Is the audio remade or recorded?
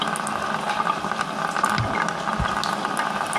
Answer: recorded